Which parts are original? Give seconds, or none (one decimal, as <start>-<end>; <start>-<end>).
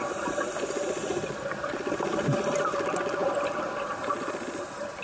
0.0-3.2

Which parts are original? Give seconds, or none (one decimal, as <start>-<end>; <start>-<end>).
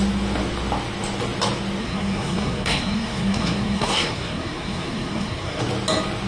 0.0-1.8; 5.6-6.3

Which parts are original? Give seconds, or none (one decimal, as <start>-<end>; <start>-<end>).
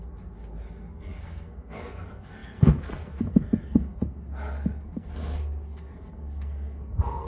none